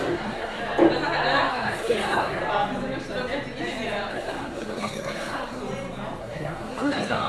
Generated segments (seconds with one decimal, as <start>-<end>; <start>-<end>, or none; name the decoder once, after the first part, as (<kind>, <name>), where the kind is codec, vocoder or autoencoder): 0.0-0.6 (codec, SNAC); 1.5-2.4; 4.1-5.6; 6.2-7.3